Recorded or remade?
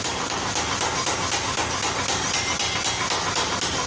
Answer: recorded